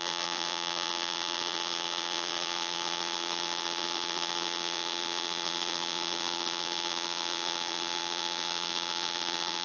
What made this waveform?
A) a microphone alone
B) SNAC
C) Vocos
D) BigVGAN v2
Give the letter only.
D